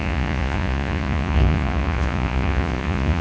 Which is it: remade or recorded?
remade